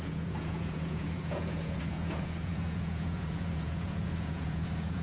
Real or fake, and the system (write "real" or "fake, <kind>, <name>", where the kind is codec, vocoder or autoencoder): fake, vocoder, Vocos